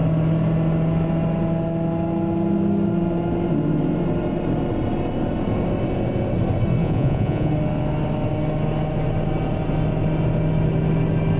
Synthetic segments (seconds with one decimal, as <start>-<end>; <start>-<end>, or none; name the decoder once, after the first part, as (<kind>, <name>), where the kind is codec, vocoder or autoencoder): 6.8-7.5 (vocoder, Vocos)